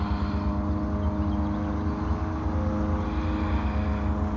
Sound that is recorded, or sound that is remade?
recorded